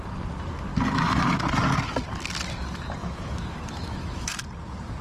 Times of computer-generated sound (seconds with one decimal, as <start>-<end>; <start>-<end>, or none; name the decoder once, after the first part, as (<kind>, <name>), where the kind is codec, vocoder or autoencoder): 3.0-4.3 (autoencoder, DAC-VAE)